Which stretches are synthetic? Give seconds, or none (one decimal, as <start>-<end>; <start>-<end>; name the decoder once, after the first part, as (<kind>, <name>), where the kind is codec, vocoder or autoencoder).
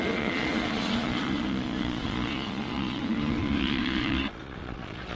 0.0-5.2 (vocoder, Vocos)